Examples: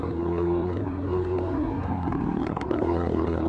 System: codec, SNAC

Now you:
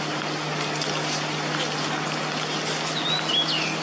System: none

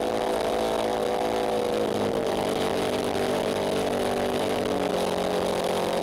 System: none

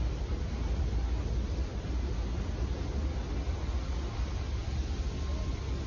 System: none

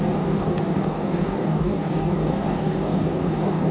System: codec, DAC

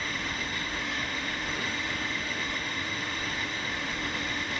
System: autoencoder, DAC-VAE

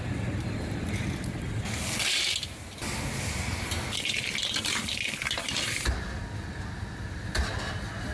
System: none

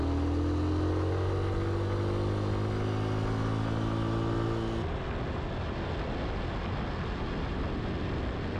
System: none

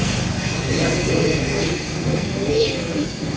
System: codec, SNAC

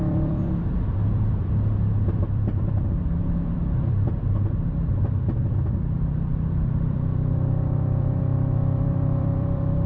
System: vocoder, BigVGAN v2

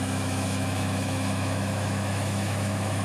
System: autoencoder, DAC-VAE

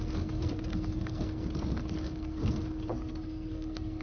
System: codec, SNAC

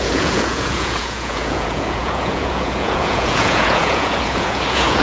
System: vocoder, Vocos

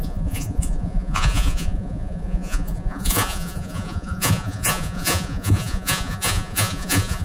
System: vocoder, Vocos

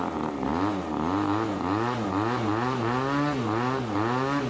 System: none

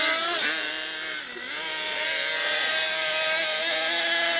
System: none